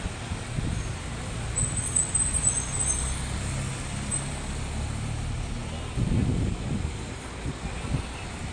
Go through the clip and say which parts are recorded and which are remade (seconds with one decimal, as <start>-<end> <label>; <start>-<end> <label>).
0.0-8.5 recorded